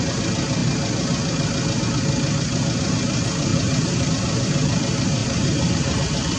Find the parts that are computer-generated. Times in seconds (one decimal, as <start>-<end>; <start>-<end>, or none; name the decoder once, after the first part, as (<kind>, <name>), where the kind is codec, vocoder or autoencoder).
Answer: 3.5-4.1 (vocoder, BigVGAN v2); 5.2-6.0